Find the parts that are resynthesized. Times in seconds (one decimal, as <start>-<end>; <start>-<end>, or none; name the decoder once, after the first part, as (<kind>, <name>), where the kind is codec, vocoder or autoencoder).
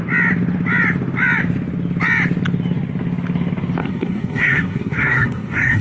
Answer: 3.8-5.8 (codec, SNAC)